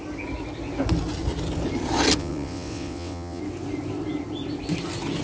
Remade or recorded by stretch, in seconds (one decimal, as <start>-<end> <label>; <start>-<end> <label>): 0.0-2.2 recorded; 2.2-3.4 remade; 3.4-5.2 recorded